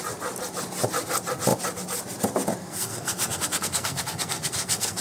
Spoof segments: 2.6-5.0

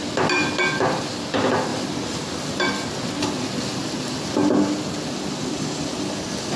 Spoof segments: none

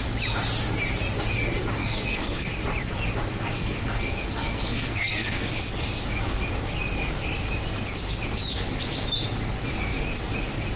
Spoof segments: 1.8-2.5; 3.3-5.5

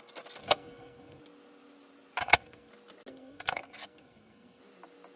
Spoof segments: 0.4-1.2; 2.2-2.7; 3.1-4.6

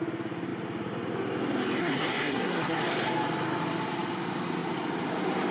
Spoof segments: 1.8-2.8